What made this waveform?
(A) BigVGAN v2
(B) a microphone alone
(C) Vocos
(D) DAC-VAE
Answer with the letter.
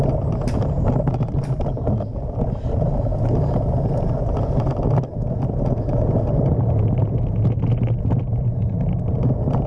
B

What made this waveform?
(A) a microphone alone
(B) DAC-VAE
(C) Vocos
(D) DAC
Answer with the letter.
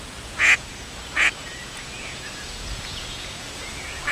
C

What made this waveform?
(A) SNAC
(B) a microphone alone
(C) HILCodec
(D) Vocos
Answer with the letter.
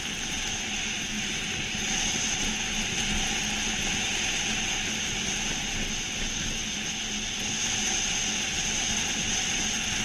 B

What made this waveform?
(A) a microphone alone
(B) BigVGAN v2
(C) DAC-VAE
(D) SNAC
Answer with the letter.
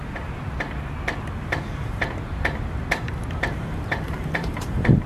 B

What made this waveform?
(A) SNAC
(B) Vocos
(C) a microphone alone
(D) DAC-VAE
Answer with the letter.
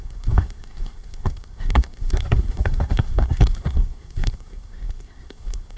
A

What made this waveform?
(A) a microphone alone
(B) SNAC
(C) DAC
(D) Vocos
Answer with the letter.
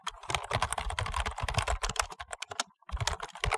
A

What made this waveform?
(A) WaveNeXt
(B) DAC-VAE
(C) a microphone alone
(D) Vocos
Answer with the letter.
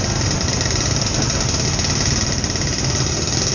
C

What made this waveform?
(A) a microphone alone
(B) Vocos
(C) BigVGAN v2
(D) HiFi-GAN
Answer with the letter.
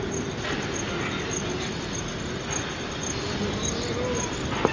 A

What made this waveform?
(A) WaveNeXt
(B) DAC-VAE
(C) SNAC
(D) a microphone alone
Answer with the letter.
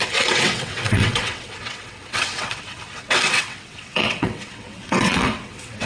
A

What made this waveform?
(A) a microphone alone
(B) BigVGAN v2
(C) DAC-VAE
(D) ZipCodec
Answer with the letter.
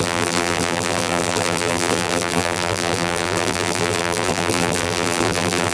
B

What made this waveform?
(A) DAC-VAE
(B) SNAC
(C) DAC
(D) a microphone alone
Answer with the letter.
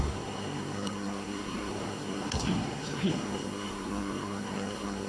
B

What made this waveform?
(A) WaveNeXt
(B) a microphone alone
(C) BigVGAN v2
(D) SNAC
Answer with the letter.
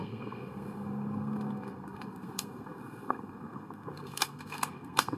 D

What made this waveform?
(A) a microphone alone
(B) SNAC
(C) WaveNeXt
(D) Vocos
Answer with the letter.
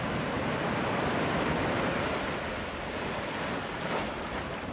A